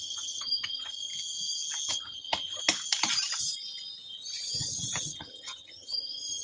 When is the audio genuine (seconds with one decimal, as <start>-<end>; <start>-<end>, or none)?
1.1-1.9; 2.6-5.0

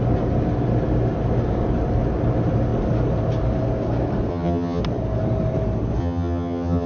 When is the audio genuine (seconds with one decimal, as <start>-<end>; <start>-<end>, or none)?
0.0-4.3; 4.8-6.0

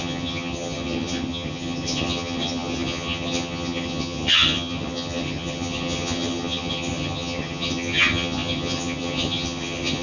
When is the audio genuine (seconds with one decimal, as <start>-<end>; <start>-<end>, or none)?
none